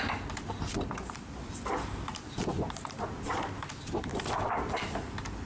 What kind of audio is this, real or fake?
real